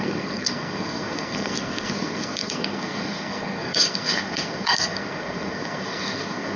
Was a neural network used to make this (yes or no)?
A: yes